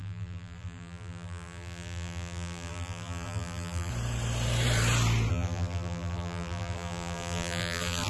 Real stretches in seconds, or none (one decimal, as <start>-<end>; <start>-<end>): 3.9-5.3